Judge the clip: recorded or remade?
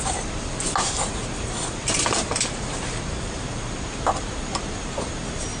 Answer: recorded